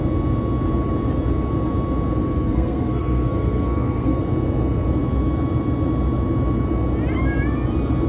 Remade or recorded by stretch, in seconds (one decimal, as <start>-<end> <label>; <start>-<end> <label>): 0.0-2.2 recorded; 2.2-4.2 remade; 4.2-8.1 recorded